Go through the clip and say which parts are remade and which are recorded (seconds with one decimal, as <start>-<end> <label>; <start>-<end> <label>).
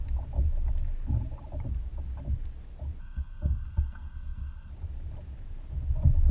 0.0-3.0 recorded; 3.0-4.7 remade; 4.7-6.3 recorded